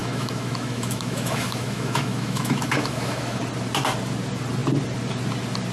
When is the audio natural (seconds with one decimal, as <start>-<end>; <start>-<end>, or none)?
3.4-5.7